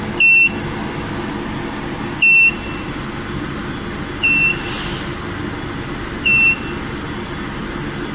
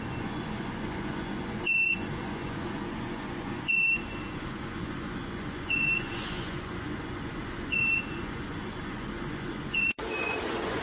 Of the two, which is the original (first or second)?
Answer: first